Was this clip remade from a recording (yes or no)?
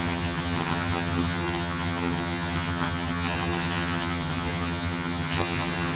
yes